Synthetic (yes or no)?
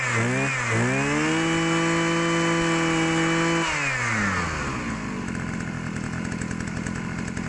no